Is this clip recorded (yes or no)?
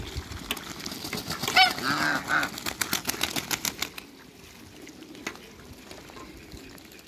yes